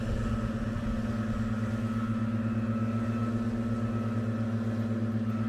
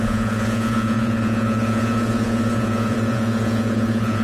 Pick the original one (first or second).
first